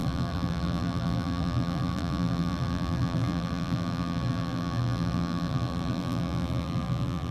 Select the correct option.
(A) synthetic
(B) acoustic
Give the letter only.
A